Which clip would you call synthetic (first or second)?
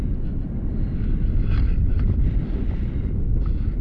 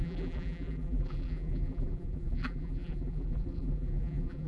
second